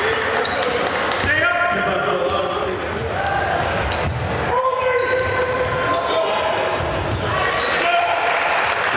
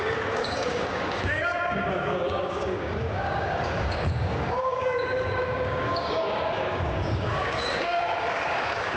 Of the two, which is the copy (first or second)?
second